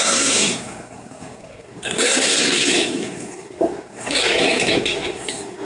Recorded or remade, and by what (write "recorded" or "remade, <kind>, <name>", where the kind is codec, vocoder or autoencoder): remade, codec, SNAC